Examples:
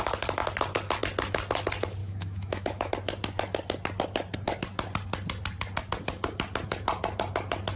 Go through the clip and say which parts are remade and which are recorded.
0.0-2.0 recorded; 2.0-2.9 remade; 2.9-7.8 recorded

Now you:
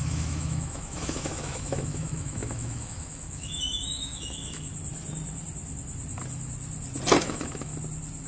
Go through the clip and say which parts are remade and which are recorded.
0.0-4.7 remade; 4.7-7.2 recorded; 7.2-7.7 remade; 7.7-8.3 recorded

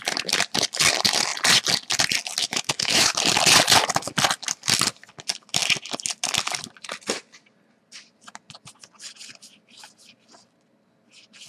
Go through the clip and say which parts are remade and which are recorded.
0.0-2.4 recorded; 2.4-3.1 remade; 3.1-11.5 recorded